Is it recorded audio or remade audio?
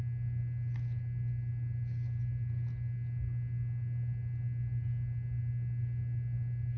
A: recorded